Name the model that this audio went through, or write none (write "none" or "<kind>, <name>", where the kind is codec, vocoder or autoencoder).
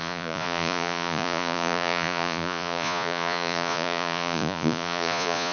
vocoder, Vocos